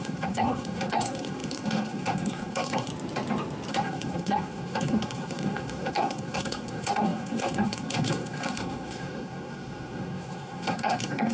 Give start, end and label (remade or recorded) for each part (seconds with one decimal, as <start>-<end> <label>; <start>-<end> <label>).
0.0-2.9 remade; 2.9-3.7 recorded; 3.7-11.3 remade